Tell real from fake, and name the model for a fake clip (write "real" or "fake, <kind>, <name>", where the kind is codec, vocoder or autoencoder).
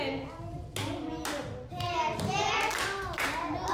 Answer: real